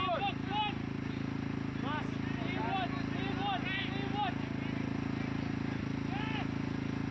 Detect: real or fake real